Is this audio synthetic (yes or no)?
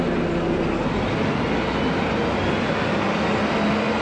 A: no